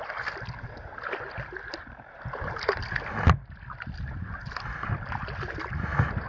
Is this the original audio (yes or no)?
yes